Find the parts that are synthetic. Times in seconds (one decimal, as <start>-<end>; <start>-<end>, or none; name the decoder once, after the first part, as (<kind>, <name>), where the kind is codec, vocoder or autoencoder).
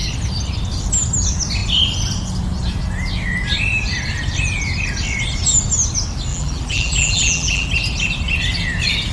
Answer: 6.3-7.7 (vocoder, BigVGAN v2)